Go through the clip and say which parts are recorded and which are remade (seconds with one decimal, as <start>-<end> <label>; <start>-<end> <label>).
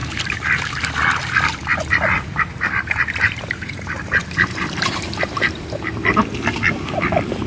0.0-0.7 remade; 0.7-1.7 recorded; 1.7-6.2 remade; 6.2-7.5 recorded